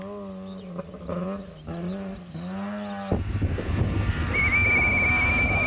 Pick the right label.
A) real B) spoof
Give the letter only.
A